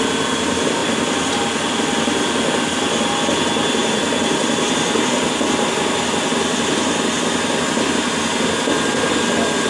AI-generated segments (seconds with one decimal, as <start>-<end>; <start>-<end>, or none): 0.8-1.3; 3.8-9.1